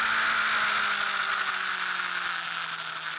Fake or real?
real